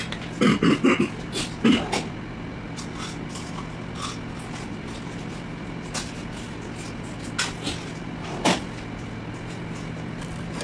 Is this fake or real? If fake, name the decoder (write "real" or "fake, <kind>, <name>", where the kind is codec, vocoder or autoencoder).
real